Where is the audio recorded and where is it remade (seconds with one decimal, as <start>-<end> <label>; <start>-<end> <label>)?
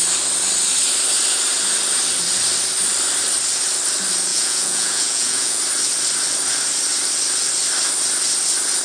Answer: 0.0-4.3 recorded; 4.3-5.6 remade; 5.6-8.8 recorded